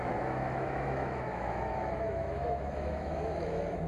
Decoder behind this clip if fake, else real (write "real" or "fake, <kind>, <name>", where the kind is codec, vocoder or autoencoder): fake, autoencoder, DAC-VAE